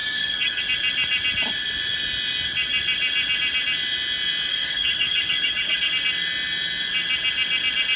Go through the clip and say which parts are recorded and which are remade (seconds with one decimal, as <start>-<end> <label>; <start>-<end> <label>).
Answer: 0.0-0.6 remade; 0.6-4.5 recorded; 4.5-5.9 remade; 5.9-8.0 recorded